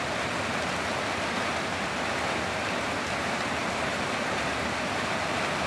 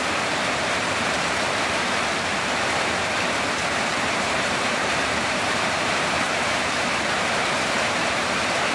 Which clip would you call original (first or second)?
first